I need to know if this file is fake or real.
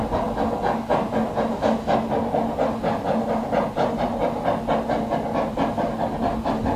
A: real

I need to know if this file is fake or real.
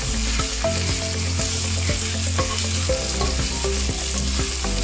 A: real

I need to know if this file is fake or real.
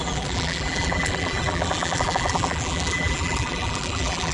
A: fake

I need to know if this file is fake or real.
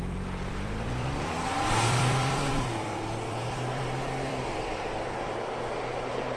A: fake